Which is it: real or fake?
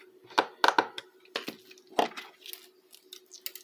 real